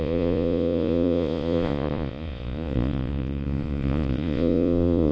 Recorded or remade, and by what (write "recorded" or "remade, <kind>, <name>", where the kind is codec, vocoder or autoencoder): remade, vocoder, Vocos